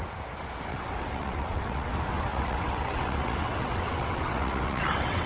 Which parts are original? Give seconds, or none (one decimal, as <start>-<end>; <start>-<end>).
0.0-0.7; 1.9-2.3